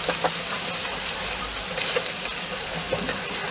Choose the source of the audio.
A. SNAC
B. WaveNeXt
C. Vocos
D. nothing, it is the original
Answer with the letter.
D